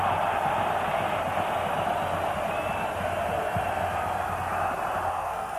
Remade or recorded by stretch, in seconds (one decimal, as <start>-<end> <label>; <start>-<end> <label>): 0.0-5.1 recorded; 5.1-5.6 remade